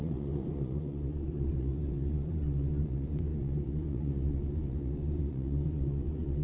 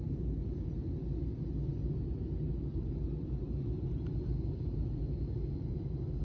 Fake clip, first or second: first